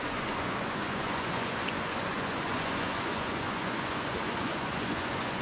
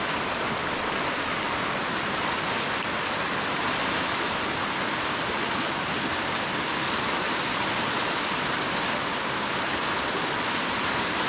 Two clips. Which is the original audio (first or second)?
second